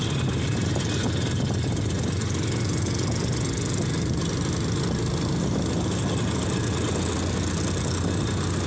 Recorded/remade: recorded